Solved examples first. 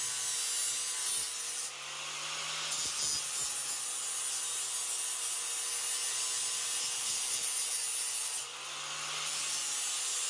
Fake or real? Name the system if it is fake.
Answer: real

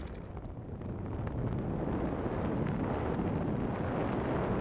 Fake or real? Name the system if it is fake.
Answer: real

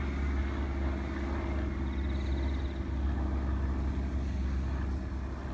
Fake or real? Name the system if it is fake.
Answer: real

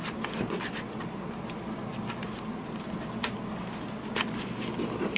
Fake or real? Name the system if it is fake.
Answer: real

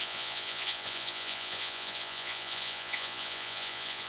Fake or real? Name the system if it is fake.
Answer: fake, vocoder, Vocos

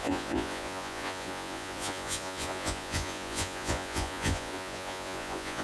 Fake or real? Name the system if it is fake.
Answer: fake, vocoder, Vocos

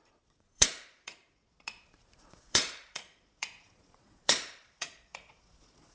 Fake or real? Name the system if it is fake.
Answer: fake, vocoder, Vocos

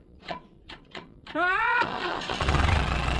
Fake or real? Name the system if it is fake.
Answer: fake, vocoder, Vocos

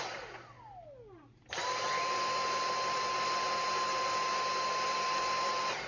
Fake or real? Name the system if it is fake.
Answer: real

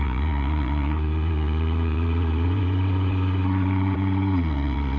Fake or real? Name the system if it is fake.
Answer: fake, vocoder, Vocos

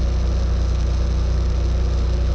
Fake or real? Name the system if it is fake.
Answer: real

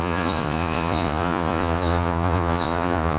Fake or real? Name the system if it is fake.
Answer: fake, vocoder, Vocos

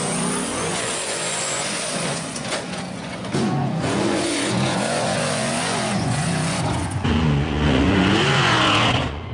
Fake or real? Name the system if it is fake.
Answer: fake, vocoder, Vocos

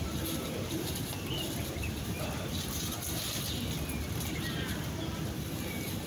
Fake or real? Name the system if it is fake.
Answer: real